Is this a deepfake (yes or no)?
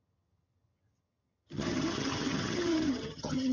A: yes